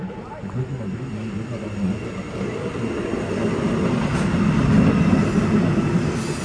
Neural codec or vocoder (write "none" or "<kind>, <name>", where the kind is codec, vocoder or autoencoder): none